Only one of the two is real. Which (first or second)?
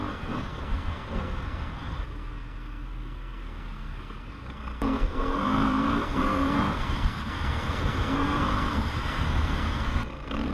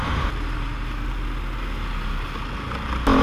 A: second